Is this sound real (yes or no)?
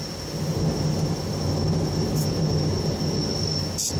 yes